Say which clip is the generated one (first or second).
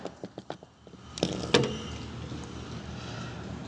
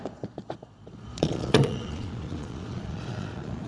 second